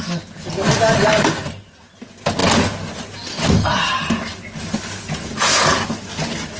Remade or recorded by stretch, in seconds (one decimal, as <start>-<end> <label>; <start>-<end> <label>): 0.0-6.6 recorded